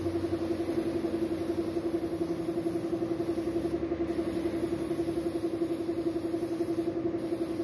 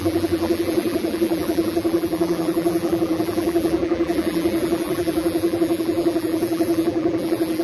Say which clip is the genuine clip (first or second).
first